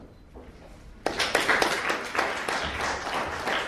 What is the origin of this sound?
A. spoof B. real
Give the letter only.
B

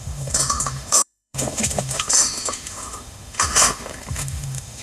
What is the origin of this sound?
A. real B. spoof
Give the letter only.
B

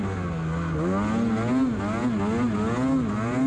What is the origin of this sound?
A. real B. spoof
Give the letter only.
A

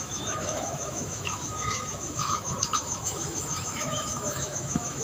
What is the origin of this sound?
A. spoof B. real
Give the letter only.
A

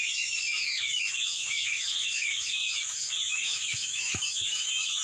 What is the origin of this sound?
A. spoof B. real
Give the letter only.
A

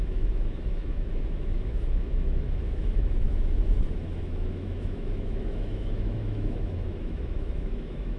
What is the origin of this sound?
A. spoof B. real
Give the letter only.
A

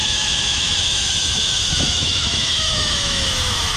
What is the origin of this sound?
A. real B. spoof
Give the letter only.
B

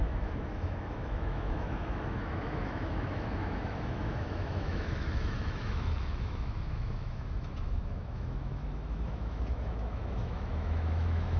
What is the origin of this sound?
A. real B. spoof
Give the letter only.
B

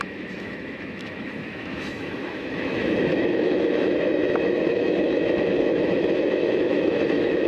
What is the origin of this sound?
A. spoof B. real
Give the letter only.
A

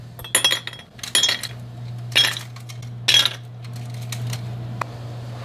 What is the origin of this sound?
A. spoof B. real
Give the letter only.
B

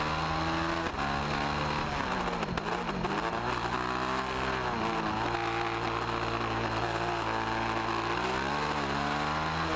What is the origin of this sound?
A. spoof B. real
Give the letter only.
B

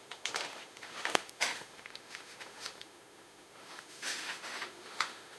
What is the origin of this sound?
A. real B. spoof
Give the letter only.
B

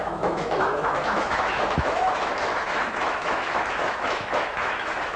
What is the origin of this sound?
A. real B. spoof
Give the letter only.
B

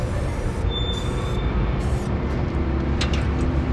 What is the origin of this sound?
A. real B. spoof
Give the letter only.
A